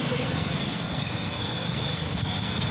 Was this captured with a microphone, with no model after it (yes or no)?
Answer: no